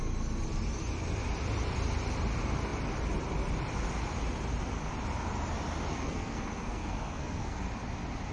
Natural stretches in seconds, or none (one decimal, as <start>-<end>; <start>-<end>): 0.0-5.9; 7.6-8.3